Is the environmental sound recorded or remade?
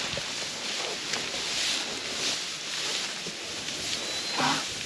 recorded